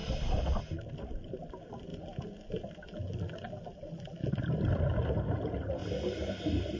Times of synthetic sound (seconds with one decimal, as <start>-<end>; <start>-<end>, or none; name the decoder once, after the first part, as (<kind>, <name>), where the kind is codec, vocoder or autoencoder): none